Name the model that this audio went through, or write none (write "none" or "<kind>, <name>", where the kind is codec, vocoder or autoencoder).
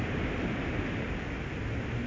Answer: none